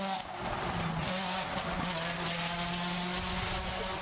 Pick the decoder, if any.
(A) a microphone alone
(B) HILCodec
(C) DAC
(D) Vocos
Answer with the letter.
A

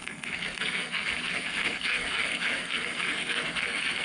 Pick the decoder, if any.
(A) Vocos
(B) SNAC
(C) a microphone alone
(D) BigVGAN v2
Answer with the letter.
B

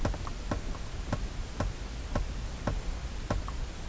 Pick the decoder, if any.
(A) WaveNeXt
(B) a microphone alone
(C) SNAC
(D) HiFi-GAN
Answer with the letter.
B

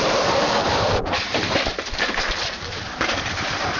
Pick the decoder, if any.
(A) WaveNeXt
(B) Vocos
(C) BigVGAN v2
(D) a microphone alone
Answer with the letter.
C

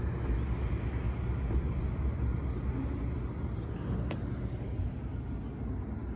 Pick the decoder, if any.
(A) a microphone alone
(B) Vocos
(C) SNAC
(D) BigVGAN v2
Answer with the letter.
A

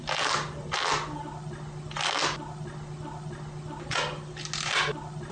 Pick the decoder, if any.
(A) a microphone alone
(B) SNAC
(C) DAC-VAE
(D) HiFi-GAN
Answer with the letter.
A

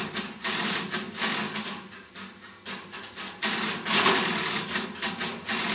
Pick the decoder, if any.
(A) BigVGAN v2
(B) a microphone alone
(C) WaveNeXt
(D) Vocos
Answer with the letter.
B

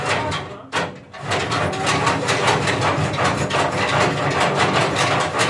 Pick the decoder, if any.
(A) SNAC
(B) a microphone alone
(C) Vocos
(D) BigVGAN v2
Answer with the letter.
B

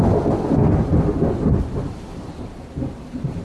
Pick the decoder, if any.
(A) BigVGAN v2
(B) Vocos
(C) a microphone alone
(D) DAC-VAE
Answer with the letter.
C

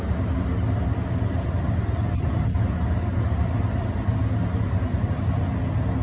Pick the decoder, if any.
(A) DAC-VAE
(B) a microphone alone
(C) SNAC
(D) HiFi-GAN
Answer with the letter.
B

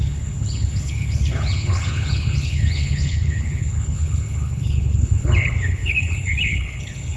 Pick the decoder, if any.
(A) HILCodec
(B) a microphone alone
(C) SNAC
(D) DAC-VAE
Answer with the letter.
A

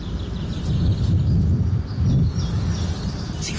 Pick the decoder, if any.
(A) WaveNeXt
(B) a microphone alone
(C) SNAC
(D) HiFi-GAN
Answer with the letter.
B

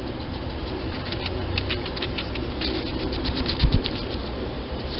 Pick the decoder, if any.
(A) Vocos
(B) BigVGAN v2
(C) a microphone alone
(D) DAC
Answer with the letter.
B